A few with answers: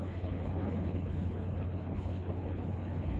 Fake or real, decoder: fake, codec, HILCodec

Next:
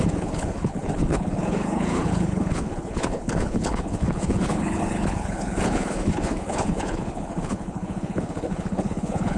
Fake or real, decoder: fake, codec, HILCodec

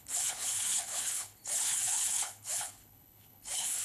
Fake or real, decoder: fake, codec, HILCodec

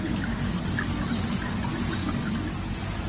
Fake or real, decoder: real